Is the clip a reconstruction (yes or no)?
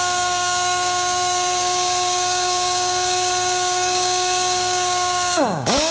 yes